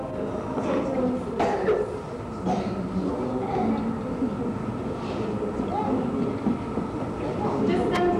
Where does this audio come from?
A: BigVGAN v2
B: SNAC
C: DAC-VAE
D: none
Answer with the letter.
D